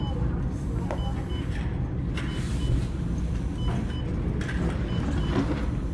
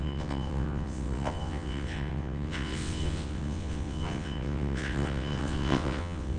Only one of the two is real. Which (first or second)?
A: first